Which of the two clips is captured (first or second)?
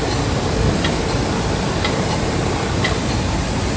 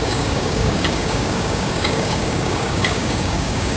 first